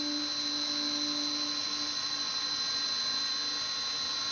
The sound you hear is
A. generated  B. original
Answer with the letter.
B